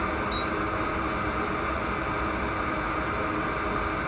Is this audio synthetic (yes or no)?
no